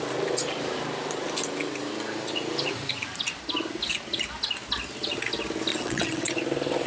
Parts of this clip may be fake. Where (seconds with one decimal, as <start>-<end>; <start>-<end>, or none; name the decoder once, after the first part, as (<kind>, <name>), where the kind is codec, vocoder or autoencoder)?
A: 5.7-6.3 (vocoder, WaveNeXt)